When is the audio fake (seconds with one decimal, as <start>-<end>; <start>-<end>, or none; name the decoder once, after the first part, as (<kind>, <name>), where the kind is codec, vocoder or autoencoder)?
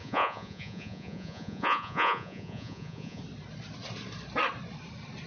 0.0-3.2 (vocoder, Vocos)